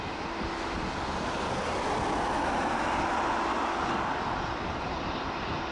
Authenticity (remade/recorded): recorded